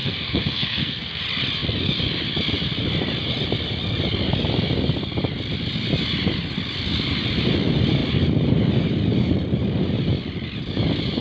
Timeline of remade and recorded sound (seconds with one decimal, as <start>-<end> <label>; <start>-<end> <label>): 0.0-1.2 remade; 1.2-11.2 recorded